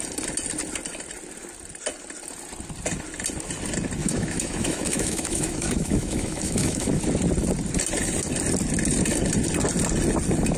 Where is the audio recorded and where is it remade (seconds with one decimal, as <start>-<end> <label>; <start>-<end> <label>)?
0.0-4.0 recorded; 4.0-7.0 remade; 7.0-10.6 recorded